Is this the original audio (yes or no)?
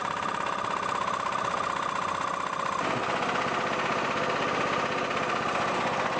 yes